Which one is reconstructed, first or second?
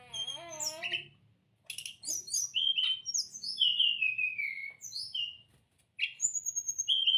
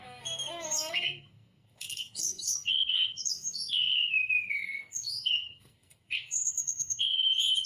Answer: second